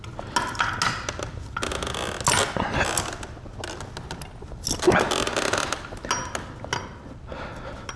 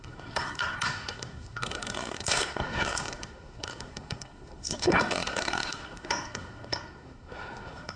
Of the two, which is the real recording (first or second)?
first